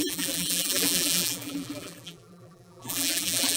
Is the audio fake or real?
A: fake